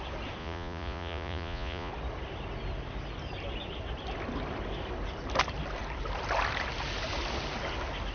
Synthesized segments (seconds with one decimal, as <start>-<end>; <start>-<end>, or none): 0.4-1.9